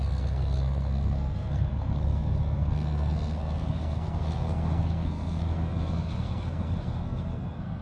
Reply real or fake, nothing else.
fake